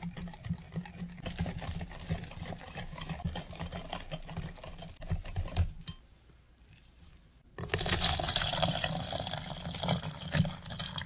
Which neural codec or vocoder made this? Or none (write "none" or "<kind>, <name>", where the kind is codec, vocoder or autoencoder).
none